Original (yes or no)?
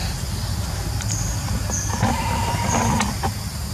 yes